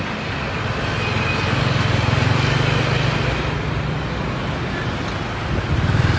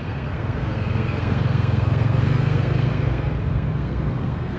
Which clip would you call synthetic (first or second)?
second